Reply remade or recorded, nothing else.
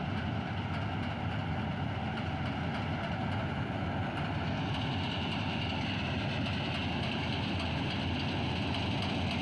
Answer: recorded